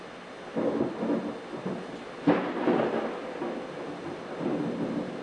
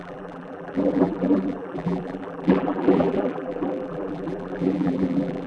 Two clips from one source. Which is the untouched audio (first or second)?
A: first